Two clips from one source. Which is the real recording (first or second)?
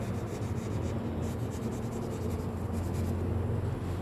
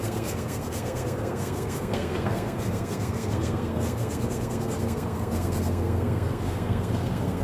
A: first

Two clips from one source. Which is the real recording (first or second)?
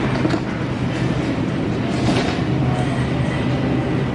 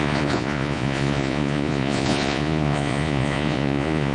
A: first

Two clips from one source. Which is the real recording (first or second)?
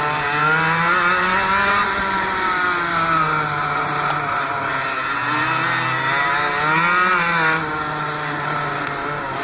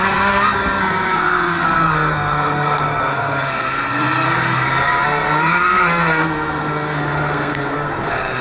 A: first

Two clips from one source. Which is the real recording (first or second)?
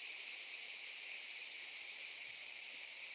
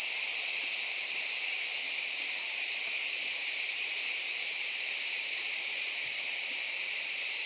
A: first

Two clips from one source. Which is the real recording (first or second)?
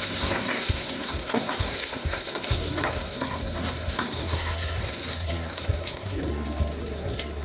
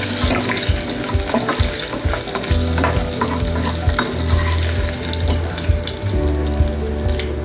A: second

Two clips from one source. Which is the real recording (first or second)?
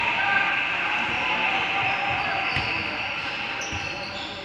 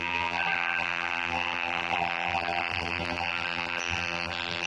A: first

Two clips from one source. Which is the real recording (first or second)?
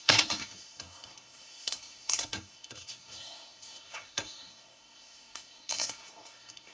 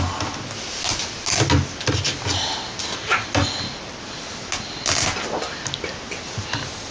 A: second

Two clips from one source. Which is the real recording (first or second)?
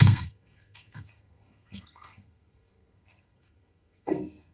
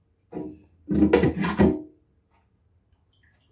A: second